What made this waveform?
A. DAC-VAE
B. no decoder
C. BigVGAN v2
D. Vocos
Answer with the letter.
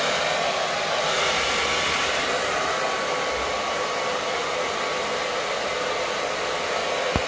B